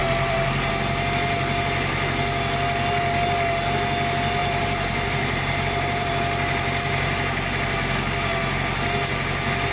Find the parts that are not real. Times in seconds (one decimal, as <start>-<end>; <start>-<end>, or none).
0.0-0.7; 4.4-6.1